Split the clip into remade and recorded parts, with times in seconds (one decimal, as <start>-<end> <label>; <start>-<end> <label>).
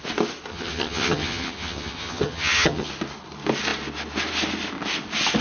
0.0-0.5 recorded; 0.5-2.9 remade; 2.9-5.4 recorded